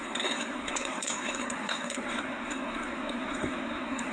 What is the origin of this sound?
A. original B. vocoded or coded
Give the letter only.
B